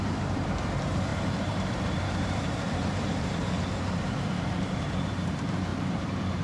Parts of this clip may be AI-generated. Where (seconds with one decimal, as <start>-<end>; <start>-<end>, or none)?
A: 0.0-6.4